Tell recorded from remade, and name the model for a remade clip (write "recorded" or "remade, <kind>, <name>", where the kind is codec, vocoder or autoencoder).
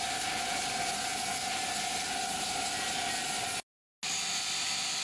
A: recorded